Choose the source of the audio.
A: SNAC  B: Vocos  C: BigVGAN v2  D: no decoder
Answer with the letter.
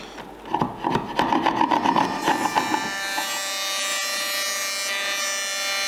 D